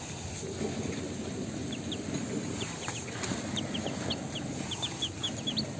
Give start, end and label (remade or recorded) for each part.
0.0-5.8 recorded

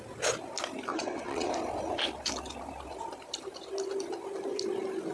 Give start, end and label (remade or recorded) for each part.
0.0-0.9 recorded; 0.9-1.5 remade; 1.5-5.1 recorded

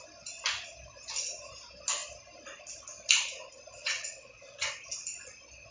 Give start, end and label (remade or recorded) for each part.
0.0-3.8 recorded; 3.8-4.7 remade; 4.7-5.7 recorded

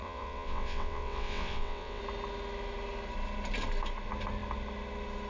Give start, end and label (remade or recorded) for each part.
0.0-2.0 remade; 2.0-5.3 recorded

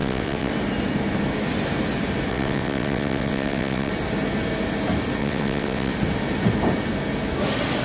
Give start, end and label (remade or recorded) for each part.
0.0-0.5 remade; 0.5-2.3 recorded; 2.3-3.9 remade; 3.9-5.2 recorded; 5.2-5.9 remade; 5.9-7.8 recorded

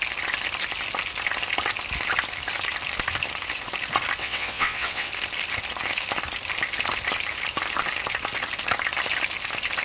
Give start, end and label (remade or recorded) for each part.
0.0-4.2 recorded; 4.2-5.1 remade; 5.1-9.8 recorded

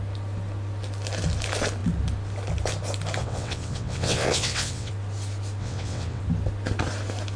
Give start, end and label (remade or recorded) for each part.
0.0-3.2 recorded; 3.2-4.9 remade; 4.9-5.6 recorded; 5.6-6.2 remade; 6.2-7.4 recorded

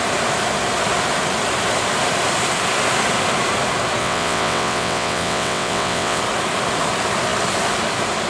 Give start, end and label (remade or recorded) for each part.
0.0-4.0 recorded; 4.0-6.2 remade; 6.2-8.3 recorded